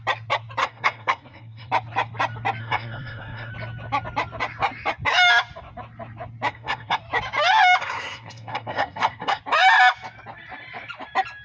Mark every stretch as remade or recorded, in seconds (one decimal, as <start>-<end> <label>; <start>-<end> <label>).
0.0-0.6 recorded; 0.6-1.7 remade; 1.7-2.6 recorded; 2.6-3.5 remade; 3.5-6.5 recorded; 6.5-7.0 remade; 7.0-7.8 recorded; 7.8-9.4 remade; 9.4-11.4 recorded